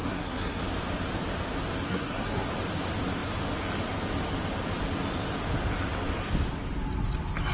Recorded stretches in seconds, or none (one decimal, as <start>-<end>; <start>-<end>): 0.6-1.9; 2.5-7.5